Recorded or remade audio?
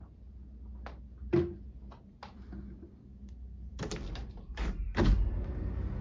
recorded